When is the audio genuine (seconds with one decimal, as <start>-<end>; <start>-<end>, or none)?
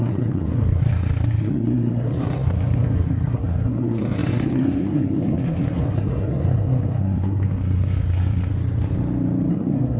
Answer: 8.5-9.5